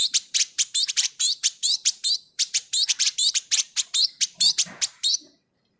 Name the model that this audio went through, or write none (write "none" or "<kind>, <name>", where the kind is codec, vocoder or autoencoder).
vocoder, BigVGAN v2